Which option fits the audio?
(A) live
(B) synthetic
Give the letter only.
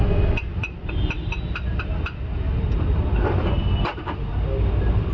A